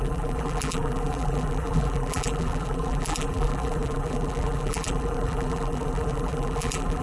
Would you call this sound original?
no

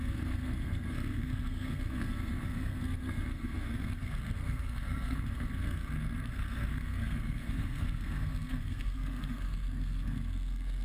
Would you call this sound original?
no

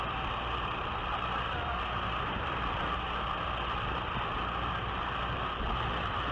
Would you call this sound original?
yes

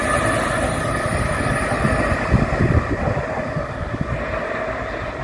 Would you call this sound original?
yes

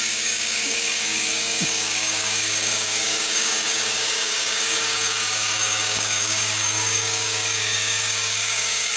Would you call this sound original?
no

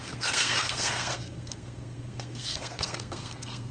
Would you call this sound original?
no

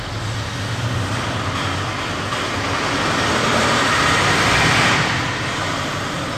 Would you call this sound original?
yes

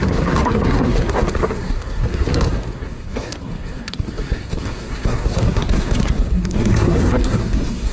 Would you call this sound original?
no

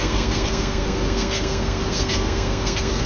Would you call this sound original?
no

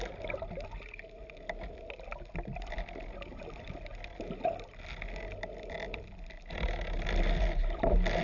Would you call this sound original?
yes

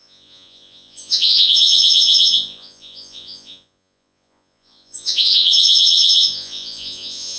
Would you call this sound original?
no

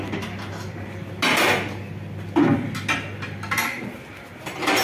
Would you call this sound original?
yes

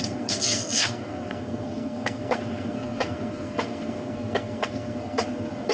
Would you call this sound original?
no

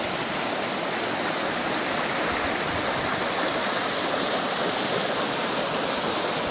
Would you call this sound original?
yes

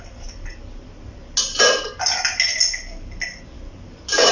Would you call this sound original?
yes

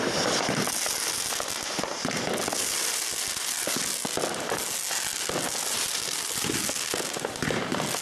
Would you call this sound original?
yes